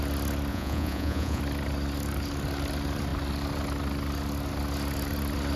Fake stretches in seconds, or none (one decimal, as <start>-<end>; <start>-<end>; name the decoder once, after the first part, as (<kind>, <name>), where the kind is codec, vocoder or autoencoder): 0.5-1.4 (vocoder, Vocos)